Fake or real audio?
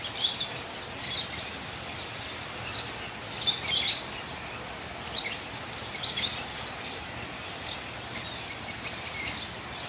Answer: real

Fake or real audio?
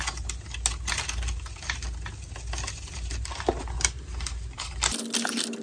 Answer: real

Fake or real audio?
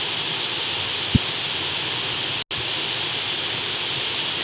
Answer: real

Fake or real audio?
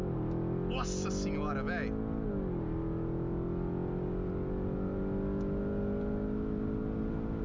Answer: real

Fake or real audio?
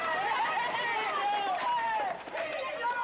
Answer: real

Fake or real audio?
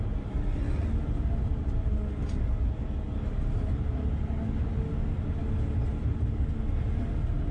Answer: real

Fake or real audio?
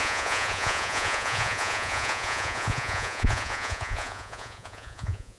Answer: fake